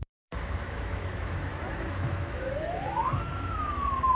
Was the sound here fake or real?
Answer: fake